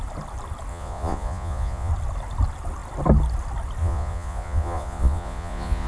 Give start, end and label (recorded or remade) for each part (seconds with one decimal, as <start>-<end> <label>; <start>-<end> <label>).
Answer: 0.0-0.7 recorded; 0.7-1.9 remade; 1.9-3.8 recorded; 3.8-5.9 remade